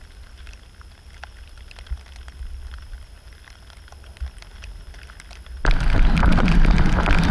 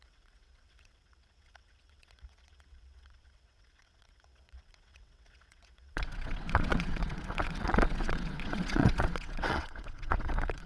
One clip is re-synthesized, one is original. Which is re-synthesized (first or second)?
second